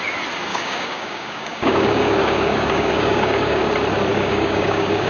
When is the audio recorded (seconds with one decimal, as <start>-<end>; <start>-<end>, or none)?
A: 0.0-0.5; 3.6-4.1